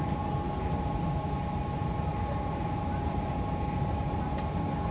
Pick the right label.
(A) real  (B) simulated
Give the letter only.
A